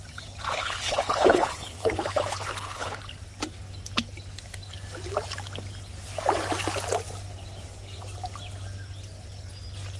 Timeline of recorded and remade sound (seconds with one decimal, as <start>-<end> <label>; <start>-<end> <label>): 0.0-0.5 recorded; 0.5-3.0 remade; 3.0-10.0 recorded